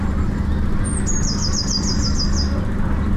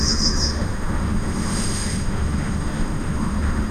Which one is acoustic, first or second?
first